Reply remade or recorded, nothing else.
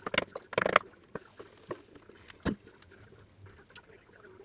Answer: recorded